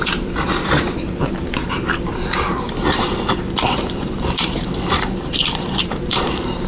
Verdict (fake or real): fake